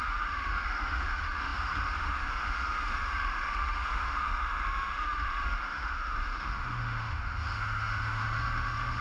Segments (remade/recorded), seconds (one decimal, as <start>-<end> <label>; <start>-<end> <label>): 0.0-9.0 remade